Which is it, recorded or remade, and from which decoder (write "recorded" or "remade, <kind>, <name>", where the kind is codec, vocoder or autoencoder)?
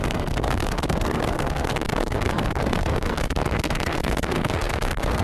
remade, codec, SNAC